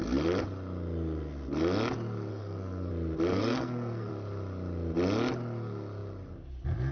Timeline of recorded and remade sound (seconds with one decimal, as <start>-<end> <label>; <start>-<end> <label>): 0.0-2.3 recorded; 2.3-2.9 remade; 2.9-3.3 recorded; 3.3-4.1 remade; 4.1-6.9 recorded